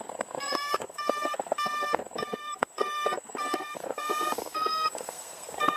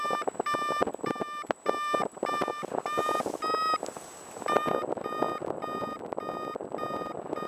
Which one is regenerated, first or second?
first